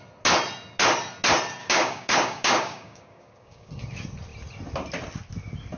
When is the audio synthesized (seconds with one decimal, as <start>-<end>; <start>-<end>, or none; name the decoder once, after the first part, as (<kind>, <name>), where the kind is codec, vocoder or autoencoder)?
1.6-3.7 (codec, DAC)